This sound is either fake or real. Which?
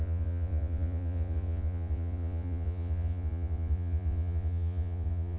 fake